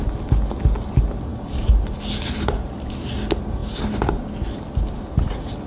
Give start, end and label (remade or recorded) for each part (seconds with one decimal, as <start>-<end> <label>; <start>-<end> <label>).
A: 0.0-5.7 recorded